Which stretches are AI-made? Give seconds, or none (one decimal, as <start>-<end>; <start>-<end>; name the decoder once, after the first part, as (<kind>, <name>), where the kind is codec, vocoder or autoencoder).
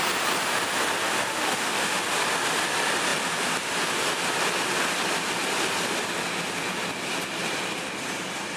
1.3-2.0 (autoencoder, DAC-VAE)